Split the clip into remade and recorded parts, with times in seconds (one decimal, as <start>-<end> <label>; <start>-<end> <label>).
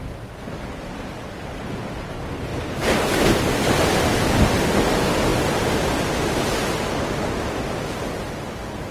0.0-8.9 recorded